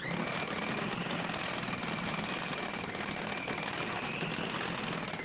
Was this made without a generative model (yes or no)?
yes